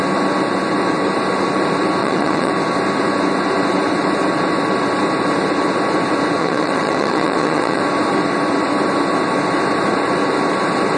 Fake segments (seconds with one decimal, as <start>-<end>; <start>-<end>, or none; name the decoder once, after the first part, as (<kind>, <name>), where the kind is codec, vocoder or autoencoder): 2.0-2.5 (vocoder, WaveNeXt); 6.4-7.8